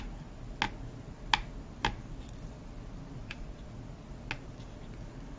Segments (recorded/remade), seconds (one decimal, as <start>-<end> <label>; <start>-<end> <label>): 0.0-3.2 recorded; 3.2-3.8 remade; 3.8-5.4 recorded